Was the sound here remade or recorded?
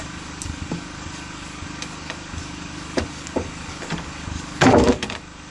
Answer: remade